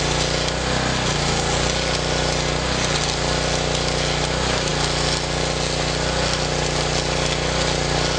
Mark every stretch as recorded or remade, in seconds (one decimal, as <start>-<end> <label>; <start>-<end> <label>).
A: 0.0-8.2 recorded